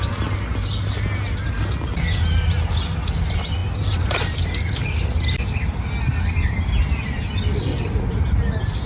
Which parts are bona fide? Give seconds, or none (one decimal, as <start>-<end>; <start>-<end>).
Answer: 0.0-8.9